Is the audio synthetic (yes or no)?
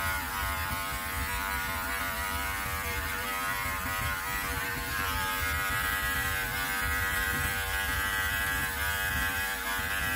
yes